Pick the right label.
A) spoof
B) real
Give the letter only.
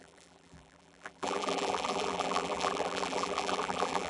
A